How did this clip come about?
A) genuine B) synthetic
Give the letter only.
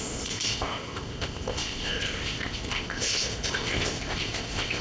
B